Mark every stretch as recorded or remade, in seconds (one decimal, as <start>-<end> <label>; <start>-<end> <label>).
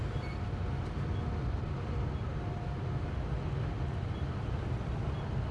0.0-5.5 recorded